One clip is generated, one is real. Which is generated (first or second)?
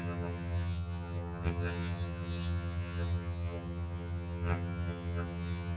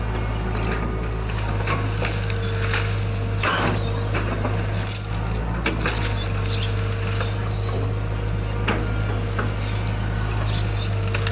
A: first